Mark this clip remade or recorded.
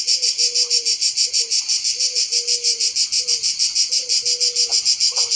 recorded